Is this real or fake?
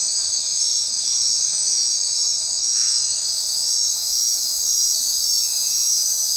fake